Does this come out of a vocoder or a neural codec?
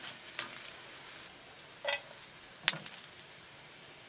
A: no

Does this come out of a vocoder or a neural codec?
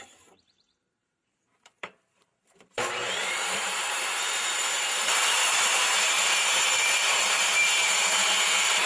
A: yes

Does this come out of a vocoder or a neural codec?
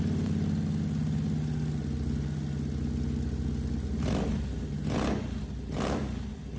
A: no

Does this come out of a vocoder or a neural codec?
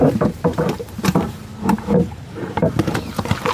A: yes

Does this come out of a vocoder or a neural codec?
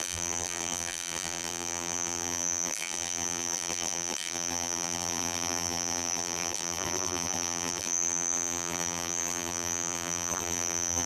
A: yes